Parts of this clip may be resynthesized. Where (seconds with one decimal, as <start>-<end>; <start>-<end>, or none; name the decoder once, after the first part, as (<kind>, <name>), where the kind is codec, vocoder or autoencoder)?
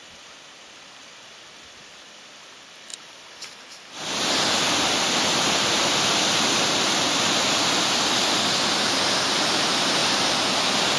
none